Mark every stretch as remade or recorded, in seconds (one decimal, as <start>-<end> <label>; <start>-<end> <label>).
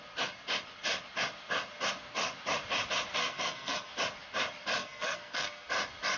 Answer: 0.0-3.2 recorded; 3.2-3.9 remade; 3.9-4.8 recorded; 4.8-5.7 remade; 5.7-6.2 recorded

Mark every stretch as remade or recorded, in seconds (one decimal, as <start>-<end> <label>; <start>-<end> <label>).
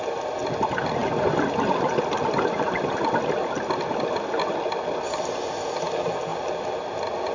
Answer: 0.0-7.3 recorded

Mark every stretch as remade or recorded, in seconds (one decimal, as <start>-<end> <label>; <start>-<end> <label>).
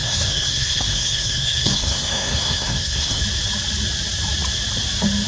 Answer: 0.0-3.2 remade; 3.2-5.3 recorded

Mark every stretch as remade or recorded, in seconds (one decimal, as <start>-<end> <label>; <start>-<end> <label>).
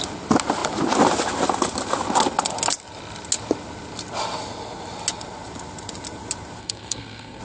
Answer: 0.0-6.6 recorded; 6.6-7.4 remade